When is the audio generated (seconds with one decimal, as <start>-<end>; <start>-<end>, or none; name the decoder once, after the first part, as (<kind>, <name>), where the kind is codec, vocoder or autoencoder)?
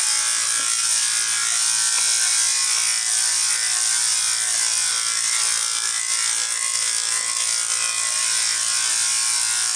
none